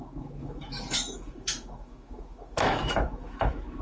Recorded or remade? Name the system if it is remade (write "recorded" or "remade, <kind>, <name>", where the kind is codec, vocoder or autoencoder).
remade, autoencoder, DAC-VAE